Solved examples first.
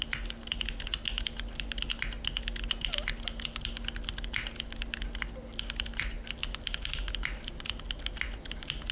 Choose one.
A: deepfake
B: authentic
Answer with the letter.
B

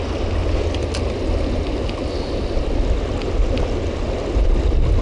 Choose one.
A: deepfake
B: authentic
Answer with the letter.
B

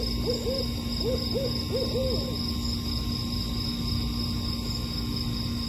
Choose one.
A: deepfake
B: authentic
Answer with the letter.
B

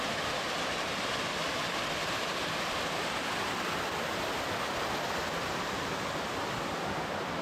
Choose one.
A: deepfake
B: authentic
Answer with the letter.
B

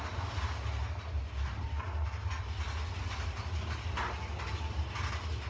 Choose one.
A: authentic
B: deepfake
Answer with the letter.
A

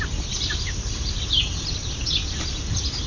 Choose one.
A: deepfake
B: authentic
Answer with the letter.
B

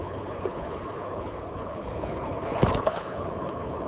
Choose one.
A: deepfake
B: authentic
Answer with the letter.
A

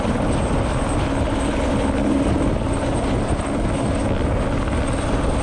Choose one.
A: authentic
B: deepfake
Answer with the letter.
A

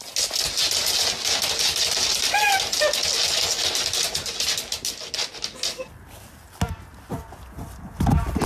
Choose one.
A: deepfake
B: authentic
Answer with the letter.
B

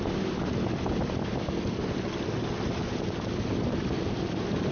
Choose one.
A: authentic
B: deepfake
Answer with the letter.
A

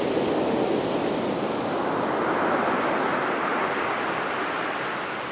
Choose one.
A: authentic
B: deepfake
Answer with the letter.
A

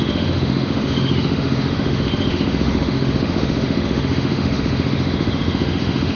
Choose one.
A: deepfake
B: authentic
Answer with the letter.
A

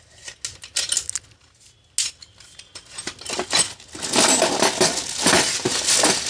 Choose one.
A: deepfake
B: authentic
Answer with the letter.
B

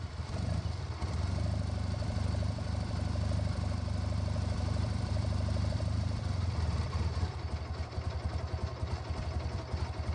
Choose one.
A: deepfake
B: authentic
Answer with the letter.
A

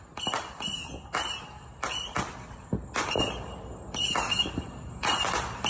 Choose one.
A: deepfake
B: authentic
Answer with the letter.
B